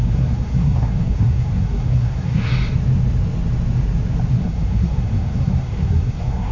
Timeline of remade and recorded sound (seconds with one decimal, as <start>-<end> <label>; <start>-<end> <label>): 0.0-2.5 remade; 2.5-4.3 recorded; 4.3-6.5 remade